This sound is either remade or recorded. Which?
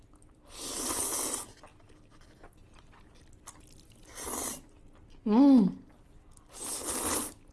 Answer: recorded